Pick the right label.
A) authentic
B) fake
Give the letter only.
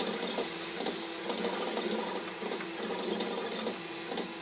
A